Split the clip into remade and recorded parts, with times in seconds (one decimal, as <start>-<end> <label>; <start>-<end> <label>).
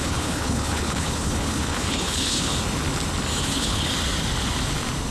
0.0-2.5 remade; 2.5-3.4 recorded; 3.4-3.9 remade; 3.9-5.1 recorded